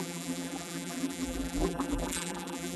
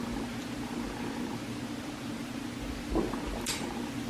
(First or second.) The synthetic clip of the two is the first